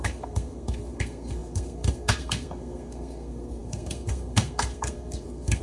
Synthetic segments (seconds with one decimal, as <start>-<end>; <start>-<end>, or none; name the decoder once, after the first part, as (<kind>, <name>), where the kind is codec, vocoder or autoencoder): 0.0-5.6 (codec, SNAC)